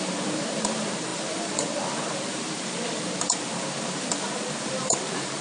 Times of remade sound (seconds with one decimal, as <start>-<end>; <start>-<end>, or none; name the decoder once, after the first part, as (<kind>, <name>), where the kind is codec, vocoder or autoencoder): 0.0-5.4 (vocoder, BigVGAN v2)